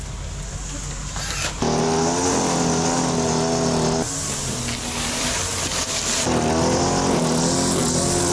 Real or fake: real